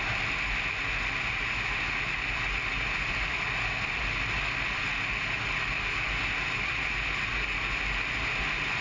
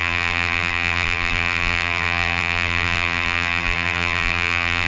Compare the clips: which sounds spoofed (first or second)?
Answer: second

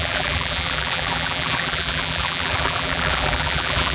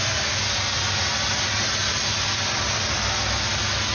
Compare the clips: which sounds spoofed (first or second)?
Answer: first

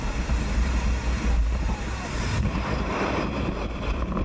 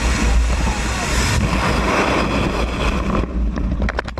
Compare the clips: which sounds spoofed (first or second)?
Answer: first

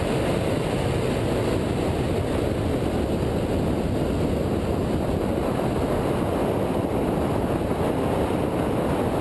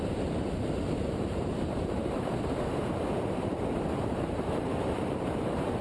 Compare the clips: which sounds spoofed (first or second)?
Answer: second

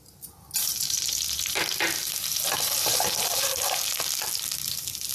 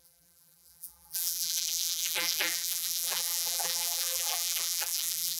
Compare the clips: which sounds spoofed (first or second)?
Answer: second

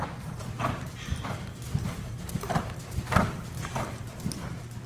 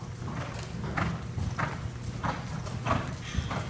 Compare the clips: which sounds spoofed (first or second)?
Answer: first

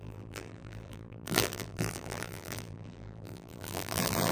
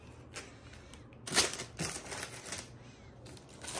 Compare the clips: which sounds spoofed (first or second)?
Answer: first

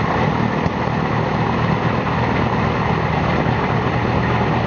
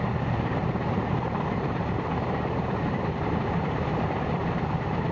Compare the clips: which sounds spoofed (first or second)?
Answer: second